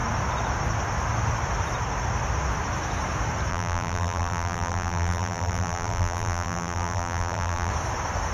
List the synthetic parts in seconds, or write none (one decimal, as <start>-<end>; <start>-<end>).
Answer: 3.5-7.7